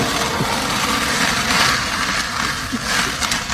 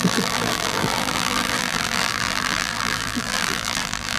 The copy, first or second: second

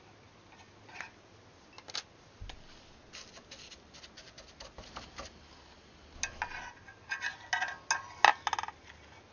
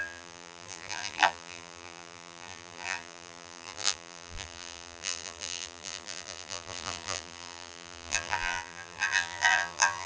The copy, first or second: second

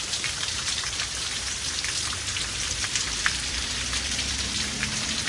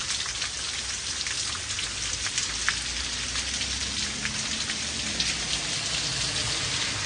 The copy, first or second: first